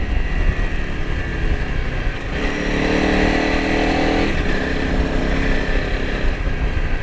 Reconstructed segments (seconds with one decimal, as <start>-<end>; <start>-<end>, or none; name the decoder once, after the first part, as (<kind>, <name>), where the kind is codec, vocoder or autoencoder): none